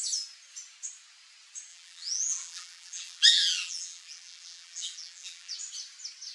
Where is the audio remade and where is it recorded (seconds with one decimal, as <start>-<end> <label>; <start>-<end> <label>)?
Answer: 0.0-1.7 recorded; 1.7-5.5 remade; 5.5-6.3 recorded